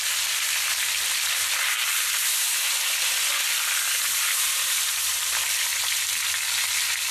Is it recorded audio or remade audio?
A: recorded